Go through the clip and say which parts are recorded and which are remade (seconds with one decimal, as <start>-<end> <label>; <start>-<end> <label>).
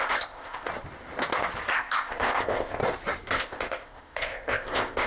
0.0-0.7 remade; 0.7-1.7 recorded; 1.7-2.8 remade; 2.8-3.4 recorded; 3.4-5.1 remade